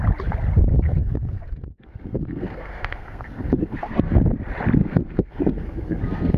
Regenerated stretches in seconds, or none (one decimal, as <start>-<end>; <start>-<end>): 0.7-4.2; 4.8-6.4